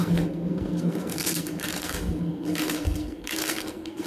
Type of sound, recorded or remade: remade